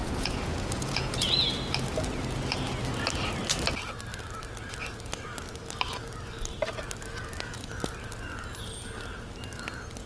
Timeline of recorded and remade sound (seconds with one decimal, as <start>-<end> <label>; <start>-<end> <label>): 0.0-1.5 remade; 1.5-10.1 recorded